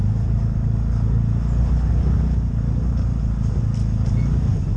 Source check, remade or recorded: recorded